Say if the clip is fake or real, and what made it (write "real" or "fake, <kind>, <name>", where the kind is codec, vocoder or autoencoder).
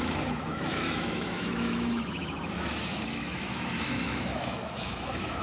fake, autoencoder, DAC-VAE